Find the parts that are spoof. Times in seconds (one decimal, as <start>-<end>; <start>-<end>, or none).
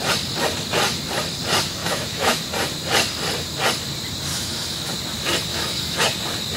1.8-2.4; 4.3-4.9; 5.5-6.0